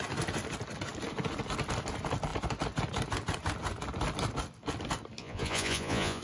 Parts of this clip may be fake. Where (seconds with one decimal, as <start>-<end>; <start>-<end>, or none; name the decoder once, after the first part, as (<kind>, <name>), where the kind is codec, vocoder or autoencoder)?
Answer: 5.2-6.2 (vocoder, Vocos)